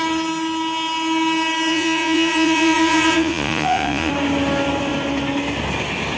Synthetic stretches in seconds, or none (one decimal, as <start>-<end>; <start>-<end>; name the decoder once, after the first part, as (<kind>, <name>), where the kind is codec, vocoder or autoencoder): 1.7-4.1 (vocoder, Vocos)